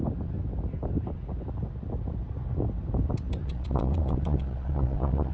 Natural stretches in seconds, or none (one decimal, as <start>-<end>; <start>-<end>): 0.0-3.4